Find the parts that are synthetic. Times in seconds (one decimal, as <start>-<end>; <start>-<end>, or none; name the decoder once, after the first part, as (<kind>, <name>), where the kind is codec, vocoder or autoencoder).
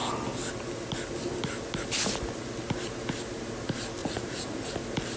4.0-4.7 (vocoder, Vocos)